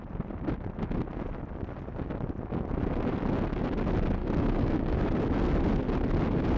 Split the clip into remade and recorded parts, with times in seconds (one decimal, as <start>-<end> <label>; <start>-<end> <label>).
0.0-4.2 recorded; 4.2-5.0 remade; 5.0-6.6 recorded